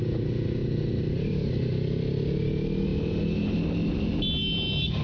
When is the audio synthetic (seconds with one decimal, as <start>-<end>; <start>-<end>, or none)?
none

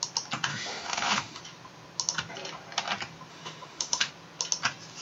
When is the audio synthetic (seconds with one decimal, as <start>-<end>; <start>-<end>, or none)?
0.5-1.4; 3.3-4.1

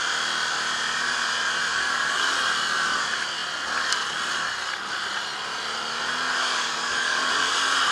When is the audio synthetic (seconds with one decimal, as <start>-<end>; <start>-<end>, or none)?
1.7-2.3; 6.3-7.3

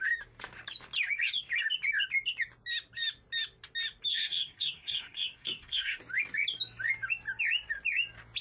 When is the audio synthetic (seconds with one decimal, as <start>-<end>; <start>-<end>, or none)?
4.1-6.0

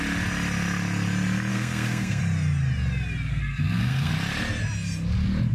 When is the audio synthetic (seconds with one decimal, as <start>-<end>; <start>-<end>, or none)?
1.5-2.2; 3.3-4.1

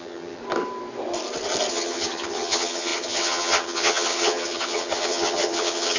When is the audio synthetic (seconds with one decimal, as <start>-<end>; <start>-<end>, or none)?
0.0-0.4; 1.7-6.0